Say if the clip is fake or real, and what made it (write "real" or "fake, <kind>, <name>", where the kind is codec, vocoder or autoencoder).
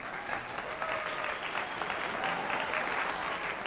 real